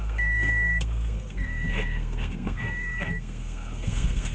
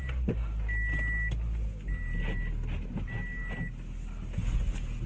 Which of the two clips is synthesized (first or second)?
first